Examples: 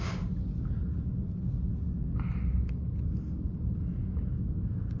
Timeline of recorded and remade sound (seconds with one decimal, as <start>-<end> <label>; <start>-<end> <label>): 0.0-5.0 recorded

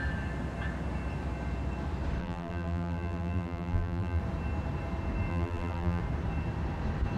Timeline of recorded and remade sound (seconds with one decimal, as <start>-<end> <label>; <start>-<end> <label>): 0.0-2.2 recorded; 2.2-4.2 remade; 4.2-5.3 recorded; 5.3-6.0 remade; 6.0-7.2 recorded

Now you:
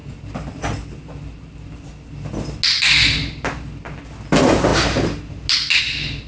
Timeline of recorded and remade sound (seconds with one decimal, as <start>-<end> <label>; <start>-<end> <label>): 0.0-6.3 recorded